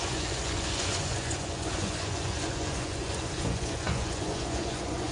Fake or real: fake